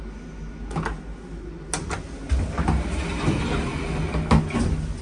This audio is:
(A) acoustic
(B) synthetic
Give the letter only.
A